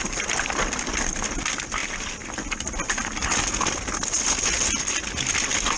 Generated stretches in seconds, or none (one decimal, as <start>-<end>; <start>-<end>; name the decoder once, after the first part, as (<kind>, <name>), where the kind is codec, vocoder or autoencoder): none